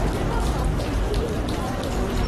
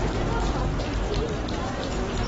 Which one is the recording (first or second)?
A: second